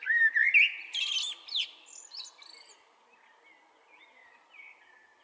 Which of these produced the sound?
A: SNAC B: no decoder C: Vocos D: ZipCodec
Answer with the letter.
B